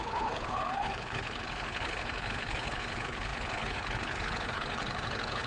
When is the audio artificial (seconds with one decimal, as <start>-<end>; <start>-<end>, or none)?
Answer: 0.0-5.5